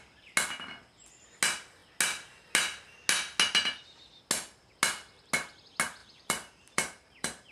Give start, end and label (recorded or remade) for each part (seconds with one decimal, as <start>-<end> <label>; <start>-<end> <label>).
0.0-6.0 recorded; 6.0-7.5 remade